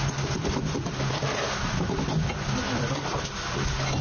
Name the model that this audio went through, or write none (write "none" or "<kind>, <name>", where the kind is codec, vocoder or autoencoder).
none